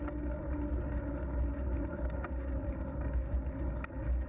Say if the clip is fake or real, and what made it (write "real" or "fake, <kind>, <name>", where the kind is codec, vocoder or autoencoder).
real